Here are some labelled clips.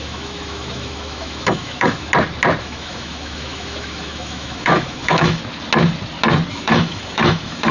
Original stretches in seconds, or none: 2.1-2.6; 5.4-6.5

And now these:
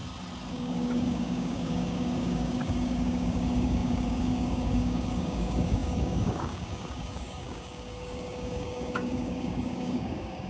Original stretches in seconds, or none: 0.0-0.5

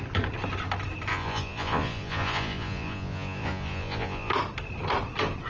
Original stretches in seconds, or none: 0.0-1.1; 4.3-5.5

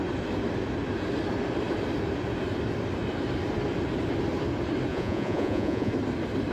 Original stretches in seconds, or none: 0.0-4.9; 5.9-6.5

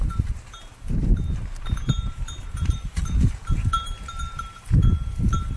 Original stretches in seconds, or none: none

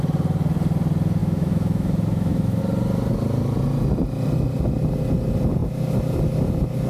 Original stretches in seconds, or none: 0.0-1.2; 2.6-6.9

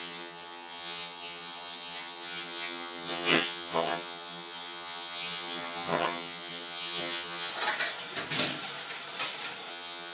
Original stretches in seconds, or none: 7.5-9.7